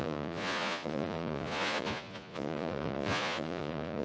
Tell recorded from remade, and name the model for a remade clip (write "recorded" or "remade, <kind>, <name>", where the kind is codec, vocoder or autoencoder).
remade, vocoder, Vocos